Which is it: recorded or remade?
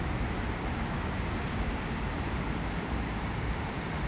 remade